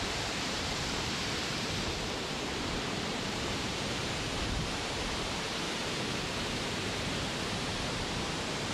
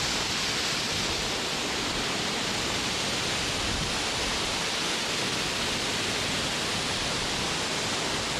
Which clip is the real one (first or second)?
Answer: second